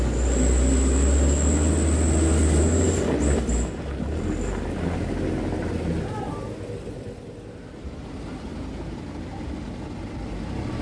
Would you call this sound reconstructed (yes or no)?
no